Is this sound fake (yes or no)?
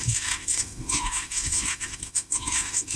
yes